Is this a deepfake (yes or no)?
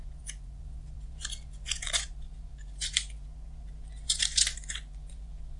yes